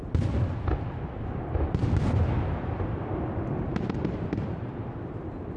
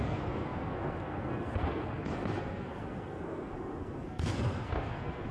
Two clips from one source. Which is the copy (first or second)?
second